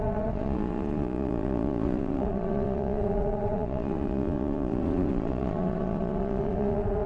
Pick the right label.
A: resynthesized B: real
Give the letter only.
A